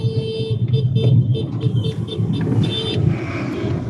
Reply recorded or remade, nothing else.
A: recorded